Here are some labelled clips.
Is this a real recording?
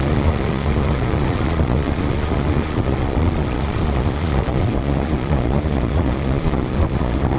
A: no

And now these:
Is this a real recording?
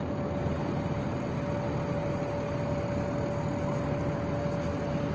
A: yes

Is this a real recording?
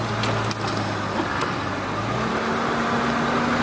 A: yes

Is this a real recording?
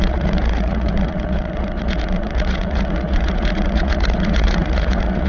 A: no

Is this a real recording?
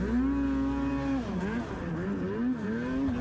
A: yes